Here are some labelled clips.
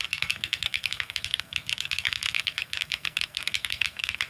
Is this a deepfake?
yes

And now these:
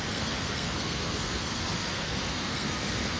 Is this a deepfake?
yes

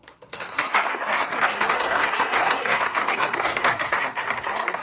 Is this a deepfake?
yes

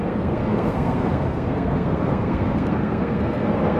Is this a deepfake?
yes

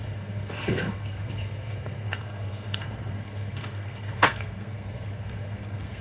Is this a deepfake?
yes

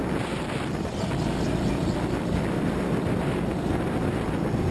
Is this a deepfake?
no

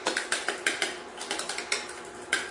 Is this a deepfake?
no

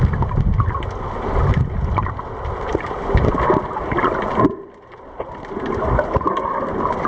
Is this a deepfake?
no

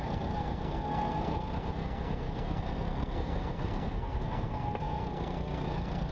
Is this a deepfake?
yes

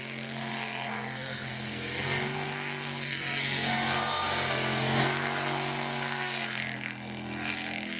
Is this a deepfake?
yes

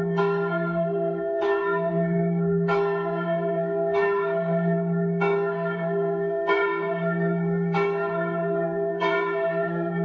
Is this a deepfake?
yes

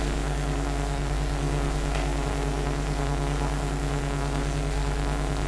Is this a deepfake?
yes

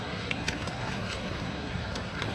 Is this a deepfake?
yes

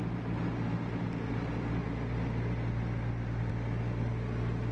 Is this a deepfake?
no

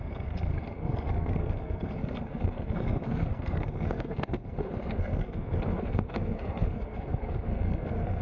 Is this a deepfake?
yes